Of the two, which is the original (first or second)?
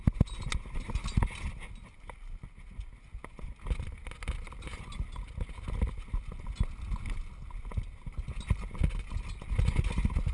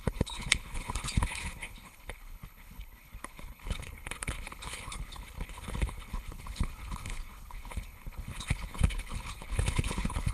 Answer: first